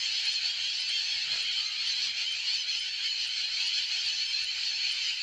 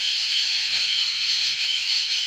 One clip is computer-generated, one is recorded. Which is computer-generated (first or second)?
second